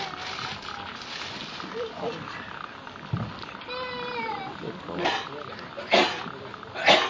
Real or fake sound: real